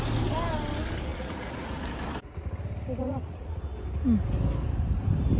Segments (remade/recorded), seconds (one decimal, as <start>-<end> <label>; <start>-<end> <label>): 0.0-1.1 recorded; 1.1-1.8 remade; 1.8-3.0 recorded; 3.0-3.6 remade; 3.6-5.4 recorded